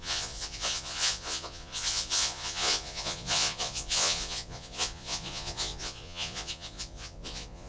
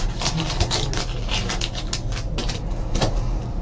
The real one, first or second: second